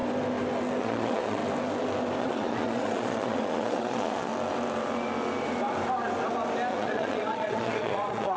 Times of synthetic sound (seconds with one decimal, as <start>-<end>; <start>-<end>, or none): 0.8-1.4; 2.2-4.3; 6.7-8.4